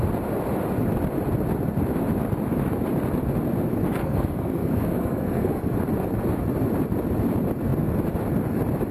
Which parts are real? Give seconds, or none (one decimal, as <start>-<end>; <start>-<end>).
0.0-4.0; 5.7-8.9